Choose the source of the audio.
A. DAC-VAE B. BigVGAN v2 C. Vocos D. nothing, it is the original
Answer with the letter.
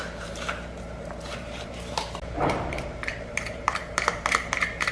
B